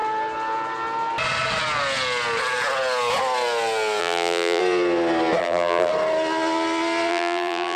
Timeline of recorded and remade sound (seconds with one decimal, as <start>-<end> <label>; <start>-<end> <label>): 0.0-4.0 recorded; 4.0-4.6 remade; 4.6-5.4 recorded; 5.4-5.9 remade; 5.9-7.1 recorded; 7.1-7.8 remade